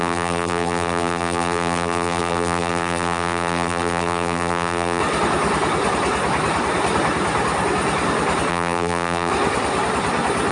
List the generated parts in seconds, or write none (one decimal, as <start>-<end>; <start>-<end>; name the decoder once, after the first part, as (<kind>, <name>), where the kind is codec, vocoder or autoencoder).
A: 0.0-5.0 (vocoder, BigVGAN v2); 8.5-9.3